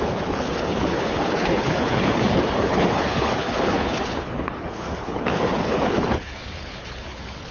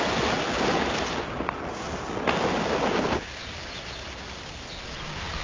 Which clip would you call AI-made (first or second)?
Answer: first